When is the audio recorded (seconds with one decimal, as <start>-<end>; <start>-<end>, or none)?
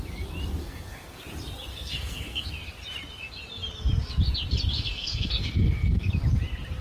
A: 0.0-0.6; 1.2-1.7; 2.5-4.7; 6.1-6.8